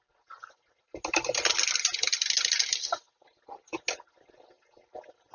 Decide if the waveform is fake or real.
real